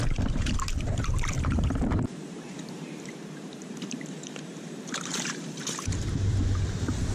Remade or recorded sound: remade